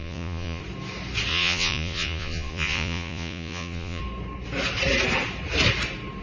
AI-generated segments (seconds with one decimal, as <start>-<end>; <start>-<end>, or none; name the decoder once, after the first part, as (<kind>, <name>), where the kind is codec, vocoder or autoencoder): 0.0-0.6 (vocoder, Vocos); 1.3-4.0